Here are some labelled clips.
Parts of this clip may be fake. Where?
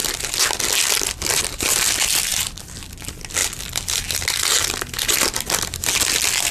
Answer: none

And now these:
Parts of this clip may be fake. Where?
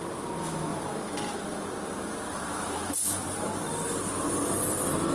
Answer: 0.7-3.6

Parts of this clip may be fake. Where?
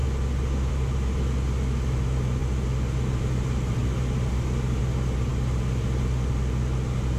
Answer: 2.4-3.2; 3.8-4.8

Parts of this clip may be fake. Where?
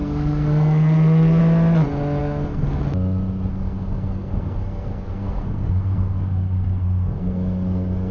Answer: 0.0-1.4; 2.2-2.8; 3.5-8.1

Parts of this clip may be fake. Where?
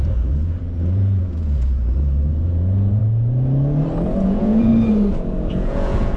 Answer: 0.0-3.0; 4.2-4.7; 5.5-6.2